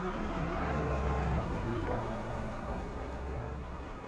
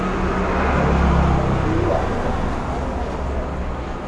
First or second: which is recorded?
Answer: second